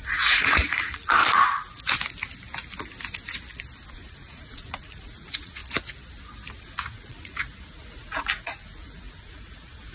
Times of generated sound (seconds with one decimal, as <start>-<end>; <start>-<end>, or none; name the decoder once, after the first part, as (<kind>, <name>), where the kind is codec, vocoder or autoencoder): 0.0-1.2 (vocoder, Vocos); 3.9-5.6; 6.6-9.9